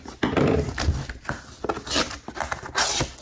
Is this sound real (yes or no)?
yes